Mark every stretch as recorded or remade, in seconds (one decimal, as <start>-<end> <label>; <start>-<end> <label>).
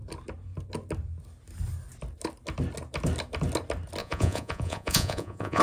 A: 0.0-4.0 recorded; 4.0-5.6 remade